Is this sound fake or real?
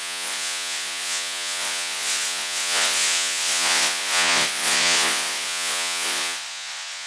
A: fake